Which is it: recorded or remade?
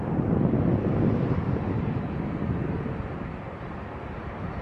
remade